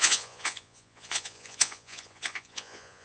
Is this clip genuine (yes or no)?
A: no